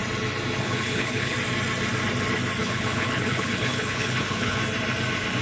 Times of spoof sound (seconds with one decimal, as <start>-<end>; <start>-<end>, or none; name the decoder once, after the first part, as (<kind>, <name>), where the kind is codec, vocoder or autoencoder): 0.6-1.3 (codec, HILCodec); 2.6-4.6